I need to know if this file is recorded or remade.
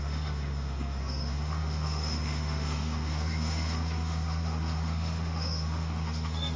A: remade